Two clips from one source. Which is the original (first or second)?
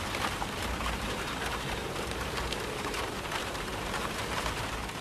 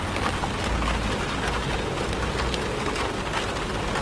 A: second